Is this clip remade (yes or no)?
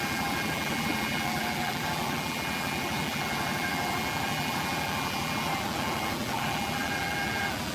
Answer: yes